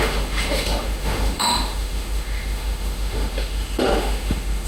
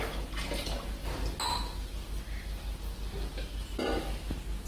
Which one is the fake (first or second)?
first